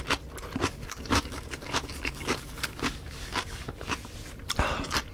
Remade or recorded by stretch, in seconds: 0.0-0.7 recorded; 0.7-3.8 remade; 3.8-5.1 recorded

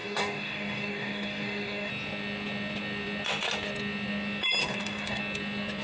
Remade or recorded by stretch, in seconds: 0.0-1.9 remade; 1.9-4.6 recorded; 4.6-5.2 remade; 5.2-5.8 recorded